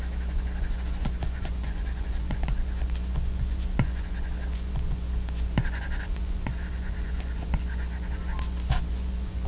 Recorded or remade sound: remade